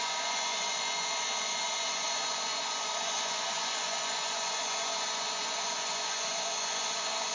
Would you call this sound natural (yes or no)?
no